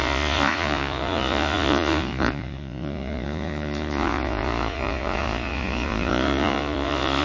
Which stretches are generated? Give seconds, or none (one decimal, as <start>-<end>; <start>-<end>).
0.0-7.2